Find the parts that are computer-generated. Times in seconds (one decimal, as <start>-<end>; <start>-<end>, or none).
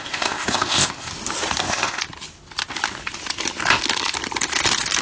0.0-1.1; 1.6-2.0